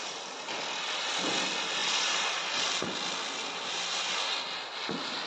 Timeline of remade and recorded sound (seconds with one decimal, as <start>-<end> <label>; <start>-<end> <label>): 0.0-5.3 recorded